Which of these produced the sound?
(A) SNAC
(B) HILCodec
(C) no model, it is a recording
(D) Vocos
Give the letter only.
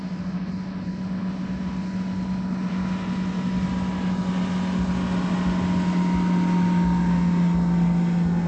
C